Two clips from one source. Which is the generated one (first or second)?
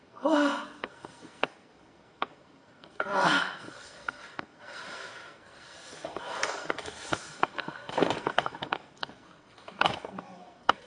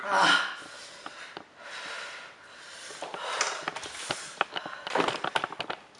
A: first